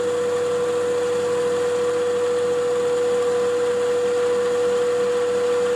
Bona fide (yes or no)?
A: yes